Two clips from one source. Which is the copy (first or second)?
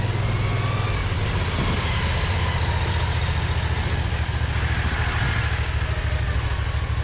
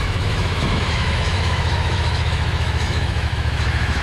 second